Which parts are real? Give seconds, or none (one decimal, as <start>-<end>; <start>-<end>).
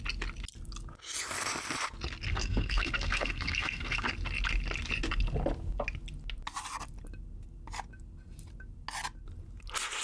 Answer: 0.0-2.3; 4.1-10.0